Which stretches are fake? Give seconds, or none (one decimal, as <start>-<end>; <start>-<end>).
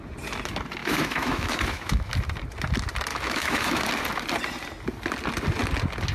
0.8-2.1; 3.1-3.9